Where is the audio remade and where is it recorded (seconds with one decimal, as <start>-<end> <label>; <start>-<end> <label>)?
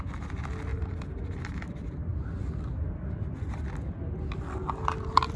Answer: 0.0-0.7 recorded; 0.7-1.7 remade; 1.7-5.4 recorded